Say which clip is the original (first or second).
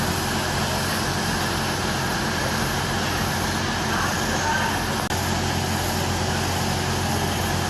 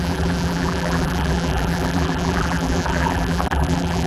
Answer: first